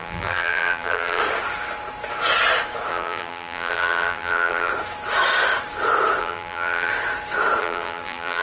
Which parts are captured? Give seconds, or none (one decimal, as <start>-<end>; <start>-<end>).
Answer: 1.2-2.9; 4.7-6.2; 6.9-7.6